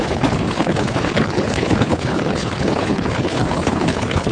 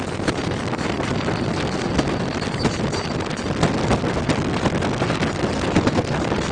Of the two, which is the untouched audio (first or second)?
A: second